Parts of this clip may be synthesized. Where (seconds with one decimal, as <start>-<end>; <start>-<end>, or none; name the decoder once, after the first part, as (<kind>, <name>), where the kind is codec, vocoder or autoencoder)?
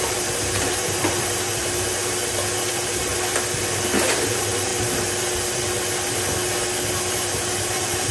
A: 0.0-2.0 (vocoder, BigVGAN v2); 2.7-3.1; 4.3-4.7; 7.1-8.1